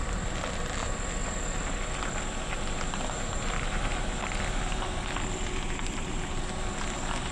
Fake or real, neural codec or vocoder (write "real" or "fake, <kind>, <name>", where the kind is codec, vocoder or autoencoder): real